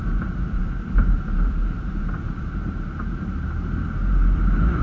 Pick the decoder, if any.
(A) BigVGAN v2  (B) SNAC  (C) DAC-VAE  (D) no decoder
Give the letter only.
A